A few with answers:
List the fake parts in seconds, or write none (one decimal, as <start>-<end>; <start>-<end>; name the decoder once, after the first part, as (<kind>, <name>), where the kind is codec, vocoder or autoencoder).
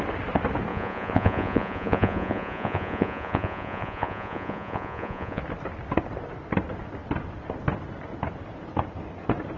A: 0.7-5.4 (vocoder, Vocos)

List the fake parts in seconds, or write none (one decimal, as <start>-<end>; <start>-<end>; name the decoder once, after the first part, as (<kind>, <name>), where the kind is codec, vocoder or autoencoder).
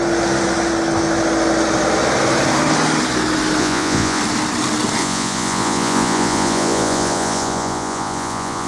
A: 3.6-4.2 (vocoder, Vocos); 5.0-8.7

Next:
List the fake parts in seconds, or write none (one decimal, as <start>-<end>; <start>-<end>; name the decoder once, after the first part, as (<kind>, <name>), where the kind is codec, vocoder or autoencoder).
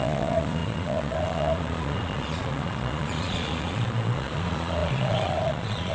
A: 0.0-5.9 (vocoder, Vocos)